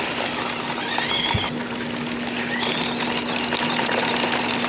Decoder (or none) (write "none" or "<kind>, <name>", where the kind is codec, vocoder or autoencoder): none